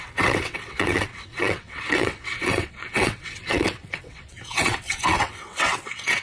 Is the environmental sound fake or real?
fake